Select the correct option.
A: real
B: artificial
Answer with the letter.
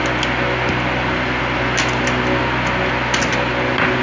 A